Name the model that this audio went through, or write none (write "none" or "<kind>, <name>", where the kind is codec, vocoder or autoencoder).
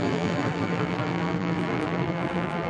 vocoder, BigVGAN v2